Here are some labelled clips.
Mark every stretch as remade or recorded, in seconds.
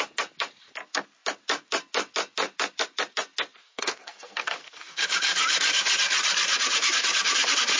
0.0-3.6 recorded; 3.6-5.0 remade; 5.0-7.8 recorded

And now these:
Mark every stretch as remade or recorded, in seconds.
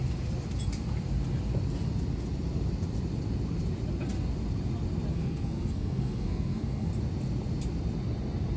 0.0-5.1 recorded; 5.1-6.9 remade; 6.9-8.6 recorded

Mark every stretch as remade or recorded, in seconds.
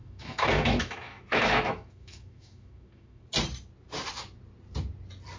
0.0-3.2 remade; 3.2-5.4 recorded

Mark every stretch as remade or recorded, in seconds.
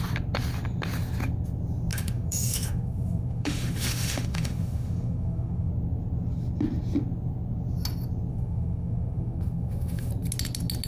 0.0-1.9 recorded; 1.9-5.7 remade; 5.7-8.3 recorded; 8.3-10.1 remade; 10.1-10.9 recorded